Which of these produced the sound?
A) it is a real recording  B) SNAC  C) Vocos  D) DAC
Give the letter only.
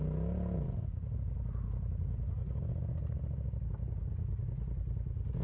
A